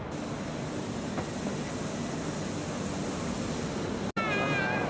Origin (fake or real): real